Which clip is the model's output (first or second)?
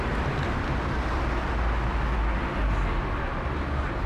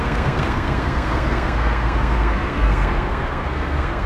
second